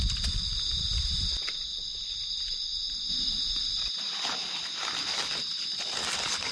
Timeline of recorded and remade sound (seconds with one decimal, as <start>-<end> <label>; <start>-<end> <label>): 0.0-0.5 remade; 0.5-6.5 recorded